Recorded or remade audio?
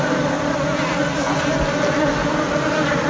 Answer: recorded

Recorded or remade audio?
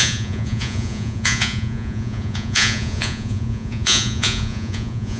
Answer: remade